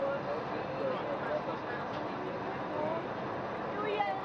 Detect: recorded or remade recorded